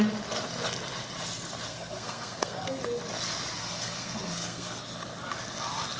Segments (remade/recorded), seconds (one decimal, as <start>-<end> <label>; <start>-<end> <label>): 0.0-1.7 recorded; 1.7-2.8 remade; 2.8-3.6 recorded; 3.6-4.8 remade; 4.8-6.0 recorded